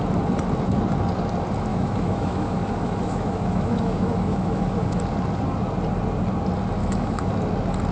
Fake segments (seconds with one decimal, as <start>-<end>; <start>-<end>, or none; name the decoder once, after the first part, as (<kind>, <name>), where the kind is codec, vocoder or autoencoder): 1.7-5.0 (autoencoder, DAC-VAE); 6.8-7.3